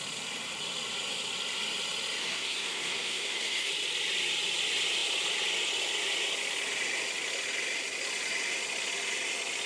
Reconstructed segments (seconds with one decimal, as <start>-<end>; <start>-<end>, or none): 2.2-3.7